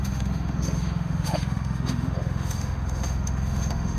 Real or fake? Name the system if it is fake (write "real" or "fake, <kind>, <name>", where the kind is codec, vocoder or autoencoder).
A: fake, autoencoder, DAC-VAE